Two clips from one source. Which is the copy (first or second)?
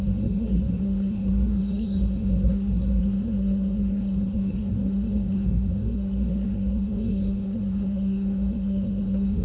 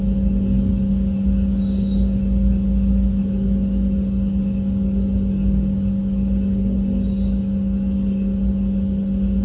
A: first